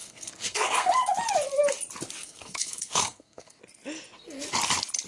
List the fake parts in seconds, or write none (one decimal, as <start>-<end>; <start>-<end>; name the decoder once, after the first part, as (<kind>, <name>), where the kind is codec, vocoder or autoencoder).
0.0-0.9 (codec, SNAC); 2.2-3.6